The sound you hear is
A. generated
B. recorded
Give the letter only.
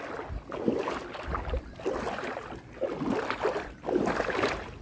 B